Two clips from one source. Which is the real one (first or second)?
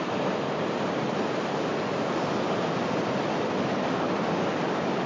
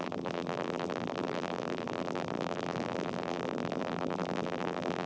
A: first